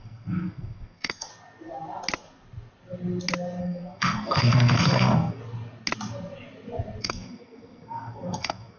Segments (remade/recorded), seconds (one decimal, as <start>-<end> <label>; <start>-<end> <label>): 0.0-1.3 remade; 1.3-3.6 recorded; 3.6-5.4 remade; 5.4-7.0 recorded; 7.0-8.8 remade